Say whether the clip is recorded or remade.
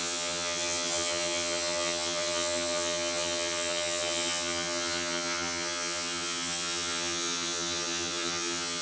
remade